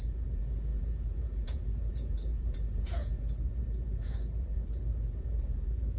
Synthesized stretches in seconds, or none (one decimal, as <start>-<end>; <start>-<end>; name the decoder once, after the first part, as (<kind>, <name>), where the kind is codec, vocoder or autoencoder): 0.0-6.0 (vocoder, Vocos)